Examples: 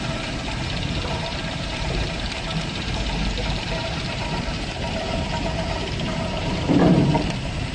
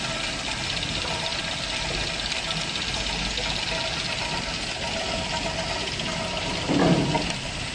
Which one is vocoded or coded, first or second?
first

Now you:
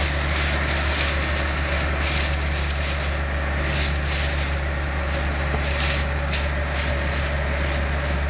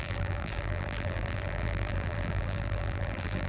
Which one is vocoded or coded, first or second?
second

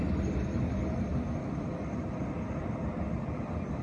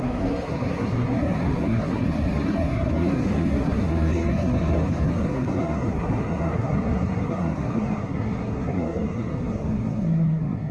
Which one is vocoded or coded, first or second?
second